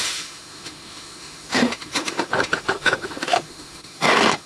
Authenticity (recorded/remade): remade